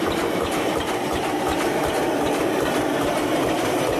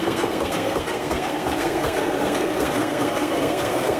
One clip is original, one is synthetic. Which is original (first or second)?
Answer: first